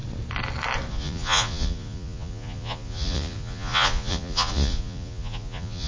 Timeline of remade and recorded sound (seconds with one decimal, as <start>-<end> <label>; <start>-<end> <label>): 0.0-0.9 recorded; 0.9-5.9 remade